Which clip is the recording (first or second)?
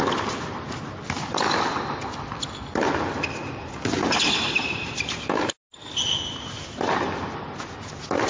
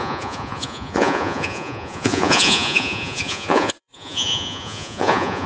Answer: first